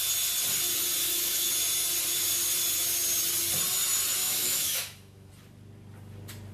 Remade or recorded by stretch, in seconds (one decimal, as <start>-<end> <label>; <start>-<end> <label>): 0.0-1.0 recorded; 1.0-1.5 remade; 1.5-4.2 recorded; 4.2-5.3 remade; 5.3-6.5 recorded